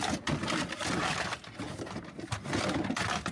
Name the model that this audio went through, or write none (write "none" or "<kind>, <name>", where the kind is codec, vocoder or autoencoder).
none